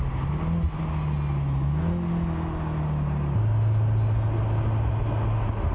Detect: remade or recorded recorded